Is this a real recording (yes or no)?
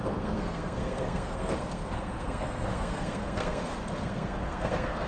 no